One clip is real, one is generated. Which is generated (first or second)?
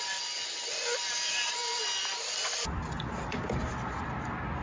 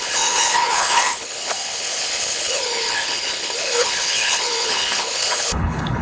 second